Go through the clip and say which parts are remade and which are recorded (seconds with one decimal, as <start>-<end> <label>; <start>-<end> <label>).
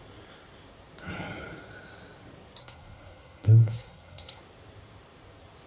0.0-2.6 recorded; 2.6-4.4 remade; 4.4-5.7 recorded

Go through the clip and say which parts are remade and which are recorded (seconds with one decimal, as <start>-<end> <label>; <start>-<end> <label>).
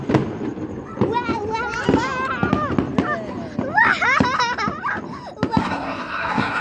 0.0-5.6 recorded; 5.6-6.6 remade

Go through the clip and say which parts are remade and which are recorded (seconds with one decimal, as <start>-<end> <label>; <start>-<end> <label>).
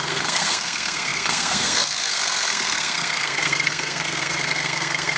0.0-5.2 remade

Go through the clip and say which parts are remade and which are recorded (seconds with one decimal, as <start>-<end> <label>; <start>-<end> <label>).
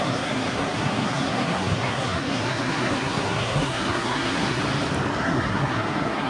0.0-4.6 remade; 4.6-5.2 recorded; 5.2-6.3 remade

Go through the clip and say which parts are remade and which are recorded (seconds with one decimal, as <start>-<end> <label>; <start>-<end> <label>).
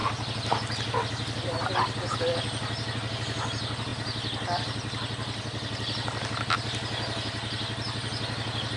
0.0-8.8 recorded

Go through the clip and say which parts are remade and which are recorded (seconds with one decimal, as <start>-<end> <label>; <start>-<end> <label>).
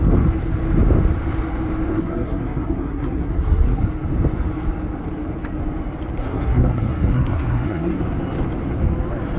0.0-1.9 recorded; 1.9-3.8 remade; 3.8-6.1 recorded; 6.1-8.0 remade; 8.0-9.4 recorded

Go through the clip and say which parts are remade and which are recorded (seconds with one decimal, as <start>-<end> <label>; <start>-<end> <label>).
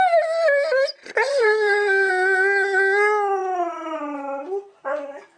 0.0-1.3 recorded; 1.3-2.1 remade; 2.1-5.4 recorded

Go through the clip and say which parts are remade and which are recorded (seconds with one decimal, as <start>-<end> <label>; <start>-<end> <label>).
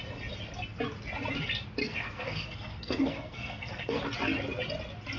0.0-1.8 recorded; 1.8-4.0 remade; 4.0-5.2 recorded